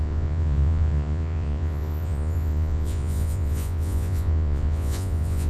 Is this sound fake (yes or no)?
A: yes